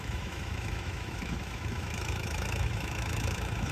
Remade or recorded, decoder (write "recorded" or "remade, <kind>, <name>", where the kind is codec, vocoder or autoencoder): remade, autoencoder, DAC-VAE